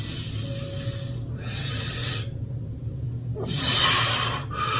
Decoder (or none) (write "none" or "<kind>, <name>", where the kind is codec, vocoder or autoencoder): none